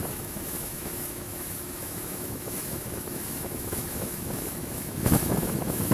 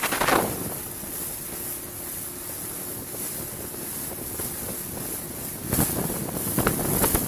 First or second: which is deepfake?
first